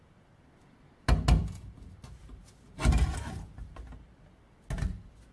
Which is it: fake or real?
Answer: real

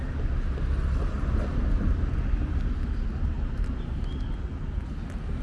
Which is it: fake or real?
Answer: real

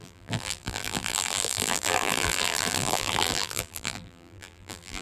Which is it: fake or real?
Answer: fake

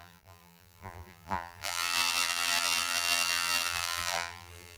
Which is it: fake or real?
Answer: fake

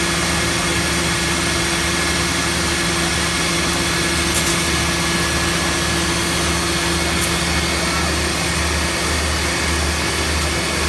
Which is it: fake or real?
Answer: real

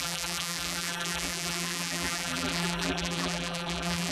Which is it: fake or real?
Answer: fake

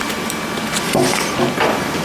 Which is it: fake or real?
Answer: real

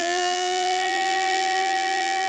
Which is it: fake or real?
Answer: fake